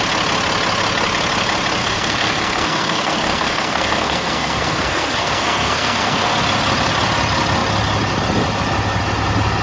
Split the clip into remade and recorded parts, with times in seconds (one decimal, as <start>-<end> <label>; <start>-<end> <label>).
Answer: 0.0-1.8 recorded; 1.8-6.4 remade; 6.4-9.6 recorded